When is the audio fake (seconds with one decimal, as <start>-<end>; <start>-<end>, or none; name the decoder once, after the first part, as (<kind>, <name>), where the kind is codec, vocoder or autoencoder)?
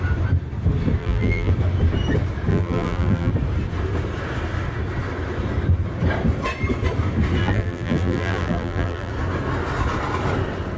1.0-1.5 (vocoder, BigVGAN v2); 2.5-3.3; 7.4-9.1